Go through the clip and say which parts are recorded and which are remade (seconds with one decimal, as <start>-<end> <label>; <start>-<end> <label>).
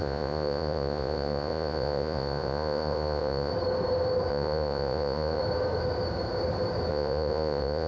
0.0-3.5 remade; 3.5-4.3 recorded; 4.3-5.4 remade; 5.4-6.9 recorded; 6.9-7.9 remade